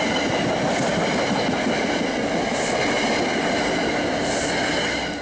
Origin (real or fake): real